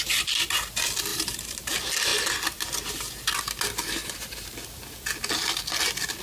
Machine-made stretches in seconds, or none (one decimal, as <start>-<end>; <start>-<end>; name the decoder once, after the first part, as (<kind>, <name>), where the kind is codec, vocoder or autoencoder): 1.1-1.7 (vocoder, BigVGAN v2)